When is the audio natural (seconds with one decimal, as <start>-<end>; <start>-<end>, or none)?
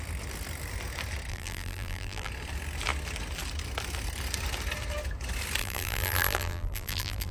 0.0-1.3; 2.3-5.6